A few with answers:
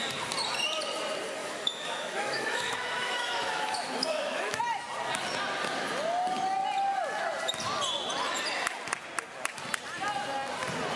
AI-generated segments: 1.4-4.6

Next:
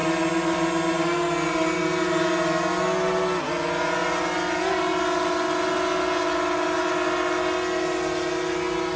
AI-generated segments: none

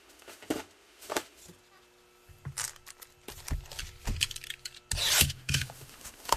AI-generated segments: 0.0-1.4; 5.2-6.4

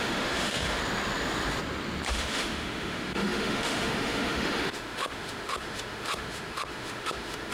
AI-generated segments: 0.0-0.8; 2.1-7.5

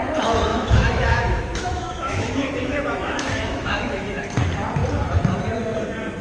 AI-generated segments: 0.5-4.2

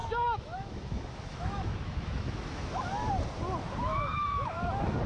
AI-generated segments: 0.0-3.1; 3.9-4.6